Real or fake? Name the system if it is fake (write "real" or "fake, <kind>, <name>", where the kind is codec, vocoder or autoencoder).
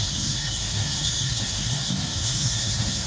fake, codec, SNAC